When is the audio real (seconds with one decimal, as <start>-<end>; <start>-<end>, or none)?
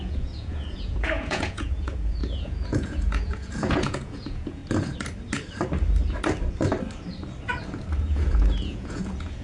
4.6-8.0